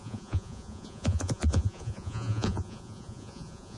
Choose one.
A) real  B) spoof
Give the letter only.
B